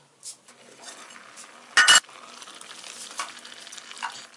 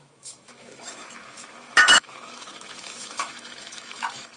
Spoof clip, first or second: second